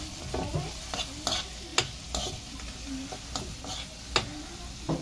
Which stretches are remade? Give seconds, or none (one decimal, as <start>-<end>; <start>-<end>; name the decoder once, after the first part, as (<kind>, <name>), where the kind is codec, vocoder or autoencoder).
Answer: none